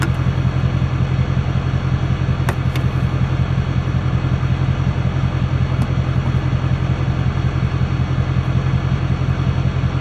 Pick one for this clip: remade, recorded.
recorded